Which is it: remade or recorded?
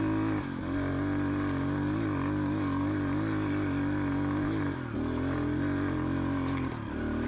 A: recorded